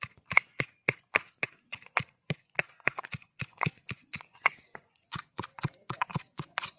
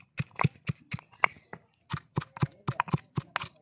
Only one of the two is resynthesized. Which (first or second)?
first